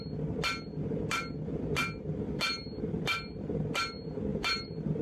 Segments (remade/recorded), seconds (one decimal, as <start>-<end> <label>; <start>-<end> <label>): 0.0-0.8 recorded; 0.8-3.8 remade; 3.8-4.3 recorded; 4.3-5.0 remade